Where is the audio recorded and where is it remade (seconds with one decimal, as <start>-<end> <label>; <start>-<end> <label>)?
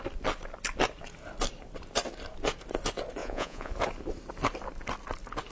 0.0-3.2 recorded; 3.2-3.7 remade; 3.7-5.5 recorded